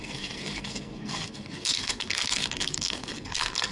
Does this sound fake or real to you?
fake